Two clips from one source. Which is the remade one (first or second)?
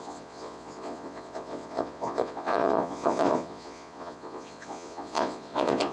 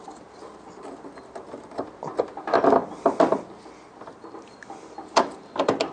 first